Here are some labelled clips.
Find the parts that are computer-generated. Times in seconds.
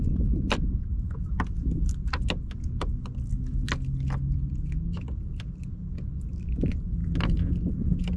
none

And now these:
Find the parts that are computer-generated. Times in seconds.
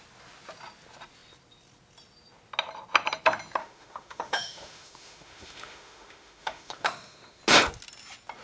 3.6-7.4 (autoencoder, DAC-VAE)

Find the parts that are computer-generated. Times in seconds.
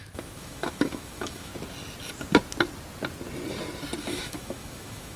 0.0-1.5 (autoencoder, DAC-VAE); 4.0-5.2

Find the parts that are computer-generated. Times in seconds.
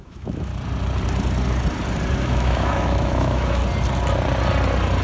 0.0-0.5 (autoencoder, DAC-VAE); 2.2-3.6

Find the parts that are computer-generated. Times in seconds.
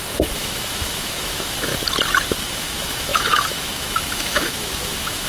0.0-1.7 (autoencoder, DAC-VAE); 2.5-5.3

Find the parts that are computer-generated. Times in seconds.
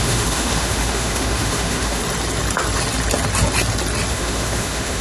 0.0-2.0 (autoencoder, DAC-VAE); 4.1-5.0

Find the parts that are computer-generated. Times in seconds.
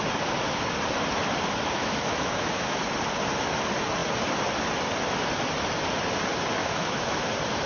1.8-2.8 (autoencoder, DAC-VAE); 6.6-7.3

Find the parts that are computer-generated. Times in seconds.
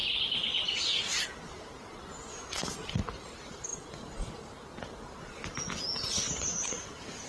none